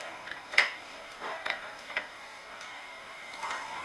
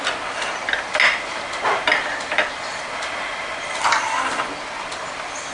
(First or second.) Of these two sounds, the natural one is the second